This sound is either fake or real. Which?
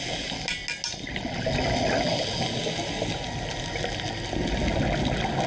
real